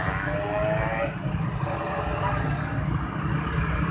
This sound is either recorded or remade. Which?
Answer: recorded